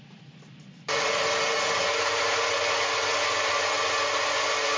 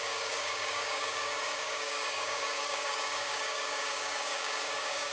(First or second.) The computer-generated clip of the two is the second